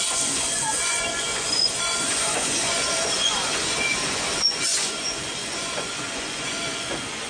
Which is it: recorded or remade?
remade